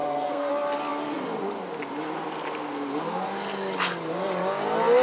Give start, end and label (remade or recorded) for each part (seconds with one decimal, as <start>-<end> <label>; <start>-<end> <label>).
0.0-0.5 remade; 0.5-5.0 recorded